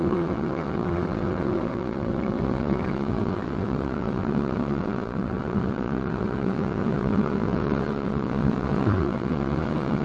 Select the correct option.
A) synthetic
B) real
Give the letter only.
A